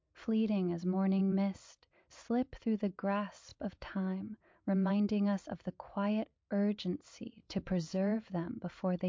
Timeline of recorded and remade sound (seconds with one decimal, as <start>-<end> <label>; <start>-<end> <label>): 0.0-3.5 recorded; 3.5-4.9 remade; 4.9-7.4 recorded; 7.4-8.5 remade; 8.5-9.1 recorded